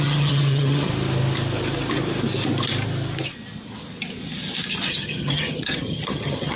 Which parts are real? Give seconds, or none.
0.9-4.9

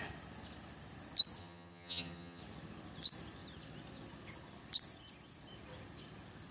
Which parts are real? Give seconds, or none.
0.0-1.4; 2.4-6.5

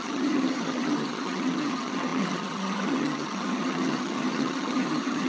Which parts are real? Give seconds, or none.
none

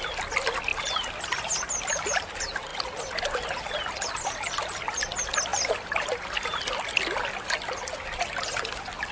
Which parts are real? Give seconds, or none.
0.0-9.1

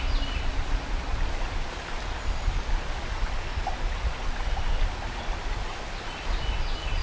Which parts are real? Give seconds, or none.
0.0-7.0

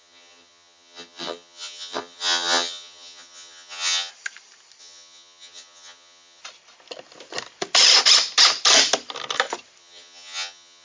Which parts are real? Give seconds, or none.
4.1-4.8; 6.4-9.8